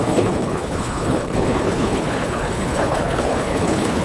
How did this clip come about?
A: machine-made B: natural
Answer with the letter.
A